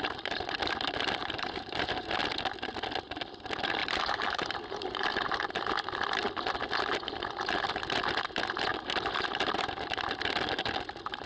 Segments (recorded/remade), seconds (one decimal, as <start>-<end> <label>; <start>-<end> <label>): 0.0-1.2 recorded; 1.2-2.1 remade; 2.1-3.8 recorded; 3.8-5.5 remade; 5.5-8.7 recorded; 8.7-9.7 remade; 9.7-11.3 recorded